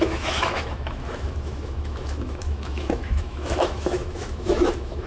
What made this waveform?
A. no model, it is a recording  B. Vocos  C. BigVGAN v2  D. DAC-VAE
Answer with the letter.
D